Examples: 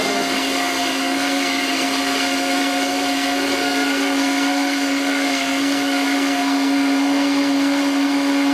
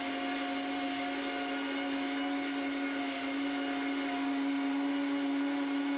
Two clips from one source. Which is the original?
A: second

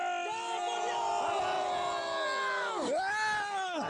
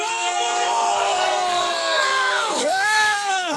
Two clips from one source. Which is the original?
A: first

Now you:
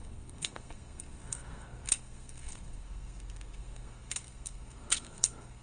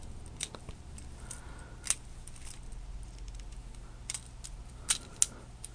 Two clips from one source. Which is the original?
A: second